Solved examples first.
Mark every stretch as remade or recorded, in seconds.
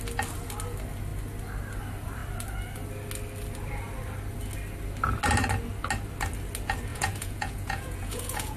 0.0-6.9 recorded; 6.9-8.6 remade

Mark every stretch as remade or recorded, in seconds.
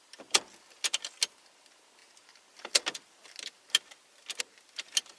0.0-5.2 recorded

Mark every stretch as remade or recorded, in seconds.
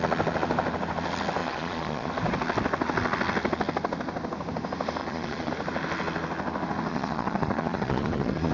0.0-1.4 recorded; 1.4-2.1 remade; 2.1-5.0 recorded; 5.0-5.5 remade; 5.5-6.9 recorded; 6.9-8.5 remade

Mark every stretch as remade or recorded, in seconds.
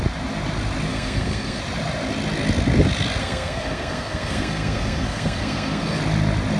0.0-0.9 recorded; 0.9-1.6 remade; 1.6-3.2 recorded; 3.2-6.0 remade; 6.0-6.6 recorded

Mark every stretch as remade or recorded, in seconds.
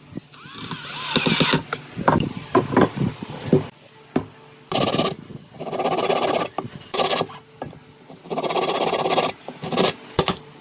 0.0-10.6 recorded